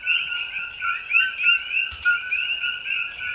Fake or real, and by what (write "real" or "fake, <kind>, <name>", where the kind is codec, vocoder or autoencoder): real